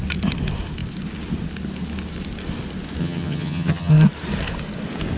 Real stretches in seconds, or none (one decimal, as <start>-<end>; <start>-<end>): 0.0-3.0; 3.9-5.2